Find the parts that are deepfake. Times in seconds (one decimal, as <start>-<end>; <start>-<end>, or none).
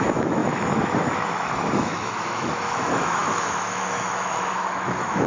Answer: 0.0-5.3